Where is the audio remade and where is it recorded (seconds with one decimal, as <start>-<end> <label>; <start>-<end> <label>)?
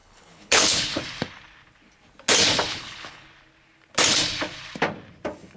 0.0-1.0 remade; 1.0-2.7 recorded; 2.7-3.3 remade; 3.3-5.6 recorded